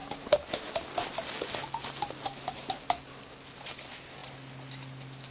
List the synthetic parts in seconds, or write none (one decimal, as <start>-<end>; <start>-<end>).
none

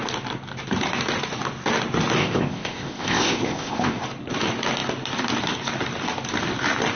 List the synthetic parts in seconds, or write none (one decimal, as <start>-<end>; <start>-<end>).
2.2-4.0